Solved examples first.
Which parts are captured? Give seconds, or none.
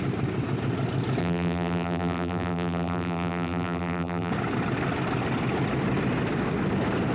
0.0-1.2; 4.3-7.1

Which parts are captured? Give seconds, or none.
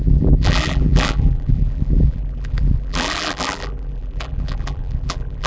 none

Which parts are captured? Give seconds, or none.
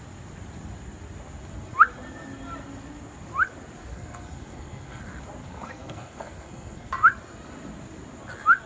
0.0-3.9; 5.0-5.4; 6.9-8.7